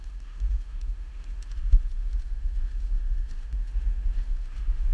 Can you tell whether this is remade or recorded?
remade